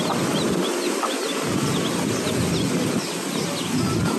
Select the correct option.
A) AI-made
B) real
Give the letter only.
B